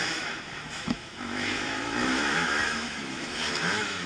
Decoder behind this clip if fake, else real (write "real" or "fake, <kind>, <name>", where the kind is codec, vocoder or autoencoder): fake, autoencoder, DAC-VAE